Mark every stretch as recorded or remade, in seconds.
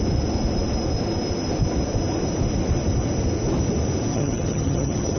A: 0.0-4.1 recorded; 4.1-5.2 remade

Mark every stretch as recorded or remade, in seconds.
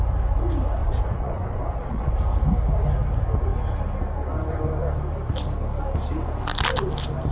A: 0.0-0.8 recorded; 0.8-2.1 remade; 2.1-7.3 recorded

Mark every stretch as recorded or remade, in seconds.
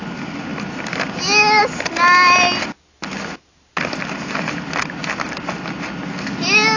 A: 0.0-6.8 recorded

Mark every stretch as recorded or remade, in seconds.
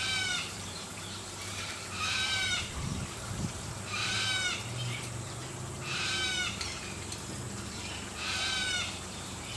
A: 0.0-5.4 remade; 5.4-6.5 recorded; 6.5-9.6 remade